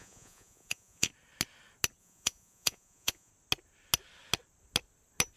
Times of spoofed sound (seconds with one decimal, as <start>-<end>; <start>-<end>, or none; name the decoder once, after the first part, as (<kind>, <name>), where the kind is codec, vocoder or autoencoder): 0.0-1.1 (vocoder, Vocos); 2.0-3.3